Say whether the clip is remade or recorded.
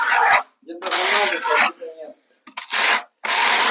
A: recorded